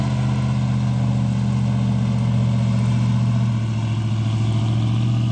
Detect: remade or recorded recorded